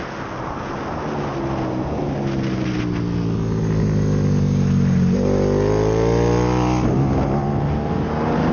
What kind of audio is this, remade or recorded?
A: recorded